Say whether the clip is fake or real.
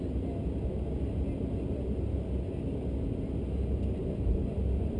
real